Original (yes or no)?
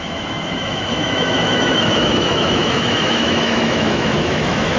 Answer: no